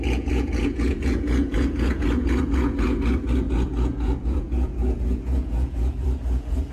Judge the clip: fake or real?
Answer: fake